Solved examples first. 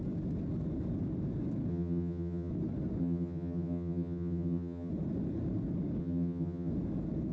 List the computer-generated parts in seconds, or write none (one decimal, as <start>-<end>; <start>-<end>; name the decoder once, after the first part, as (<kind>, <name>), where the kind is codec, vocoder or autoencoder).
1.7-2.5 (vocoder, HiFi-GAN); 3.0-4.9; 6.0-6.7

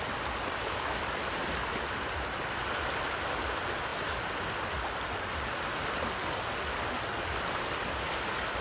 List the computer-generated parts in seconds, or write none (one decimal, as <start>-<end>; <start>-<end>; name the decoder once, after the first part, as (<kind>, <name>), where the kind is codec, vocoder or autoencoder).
none

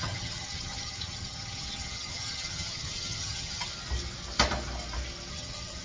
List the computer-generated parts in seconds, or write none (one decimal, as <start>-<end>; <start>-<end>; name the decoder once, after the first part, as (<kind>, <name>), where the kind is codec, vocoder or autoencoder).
0.0-3.7 (vocoder, HiFi-GAN); 5.3-5.8

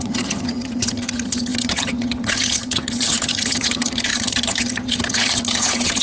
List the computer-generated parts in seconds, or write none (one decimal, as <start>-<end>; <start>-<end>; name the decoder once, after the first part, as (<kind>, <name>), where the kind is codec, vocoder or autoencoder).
0.0-6.0 (vocoder, HiFi-GAN)